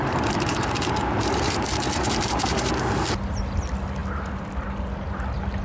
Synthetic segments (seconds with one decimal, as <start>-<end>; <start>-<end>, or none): 0.0-2.7